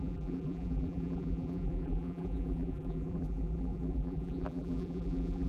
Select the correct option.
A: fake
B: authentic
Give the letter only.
A